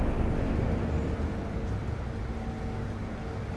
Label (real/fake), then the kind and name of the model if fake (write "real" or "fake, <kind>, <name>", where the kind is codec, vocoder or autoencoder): real